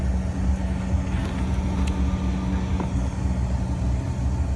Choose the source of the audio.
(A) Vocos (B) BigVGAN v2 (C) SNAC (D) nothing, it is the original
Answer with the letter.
D